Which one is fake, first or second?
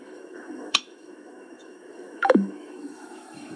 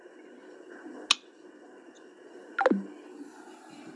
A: first